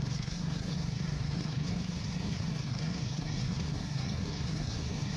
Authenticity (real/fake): fake